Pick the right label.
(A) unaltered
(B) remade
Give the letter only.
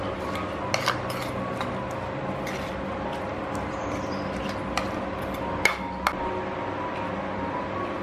A